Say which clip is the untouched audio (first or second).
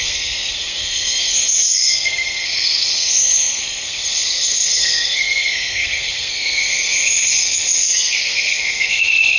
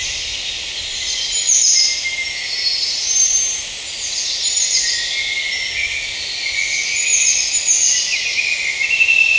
second